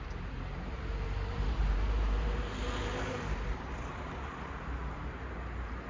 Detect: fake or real fake